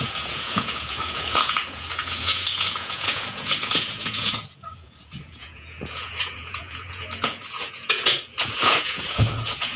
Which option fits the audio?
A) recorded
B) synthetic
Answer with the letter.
B